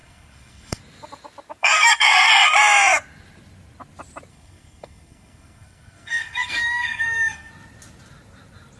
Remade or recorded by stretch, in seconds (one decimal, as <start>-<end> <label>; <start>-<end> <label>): 0.0-0.8 remade; 0.8-1.6 recorded; 1.6-2.3 remade; 2.3-4.3 recorded; 4.3-7.5 remade; 7.5-8.8 recorded